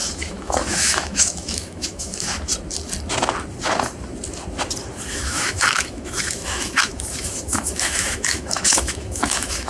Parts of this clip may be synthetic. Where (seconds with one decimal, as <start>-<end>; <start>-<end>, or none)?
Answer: 0.0-2.5; 5.1-9.7